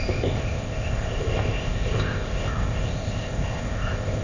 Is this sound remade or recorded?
remade